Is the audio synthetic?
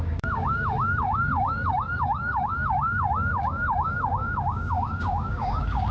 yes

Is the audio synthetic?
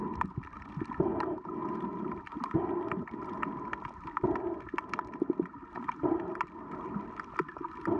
no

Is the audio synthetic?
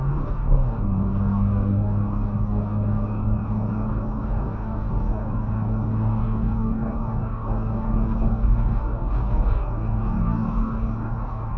yes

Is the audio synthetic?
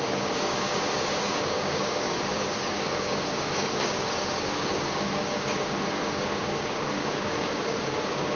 yes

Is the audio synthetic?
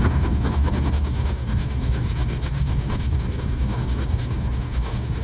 yes